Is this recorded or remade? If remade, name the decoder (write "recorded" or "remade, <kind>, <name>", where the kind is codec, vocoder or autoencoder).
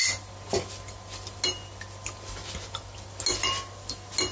recorded